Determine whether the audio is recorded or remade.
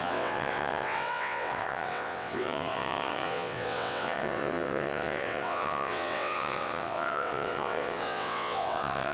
remade